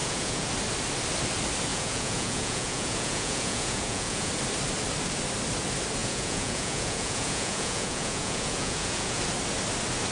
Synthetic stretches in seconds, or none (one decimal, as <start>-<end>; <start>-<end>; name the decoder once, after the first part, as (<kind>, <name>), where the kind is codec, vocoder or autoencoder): 0.0-0.5 (vocoder, Vocos); 1.7-4.3; 6.0-9.2